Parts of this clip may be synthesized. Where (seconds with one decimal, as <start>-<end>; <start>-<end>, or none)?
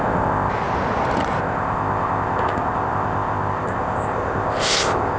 0.0-0.5; 1.4-5.2